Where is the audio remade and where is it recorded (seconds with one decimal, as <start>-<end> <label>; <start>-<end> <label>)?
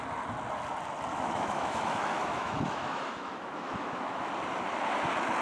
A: 0.0-1.1 recorded; 1.1-4.3 remade; 4.3-5.4 recorded